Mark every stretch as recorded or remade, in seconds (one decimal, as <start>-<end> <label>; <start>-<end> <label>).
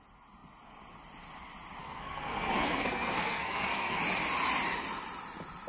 0.0-1.8 recorded; 1.8-4.0 remade; 4.0-5.7 recorded